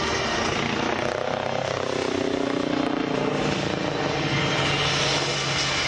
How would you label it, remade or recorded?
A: recorded